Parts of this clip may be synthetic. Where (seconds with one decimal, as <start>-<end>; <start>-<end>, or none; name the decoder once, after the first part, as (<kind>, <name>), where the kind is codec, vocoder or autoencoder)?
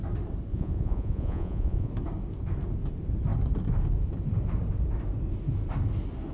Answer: 0.5-1.9 (vocoder, Vocos)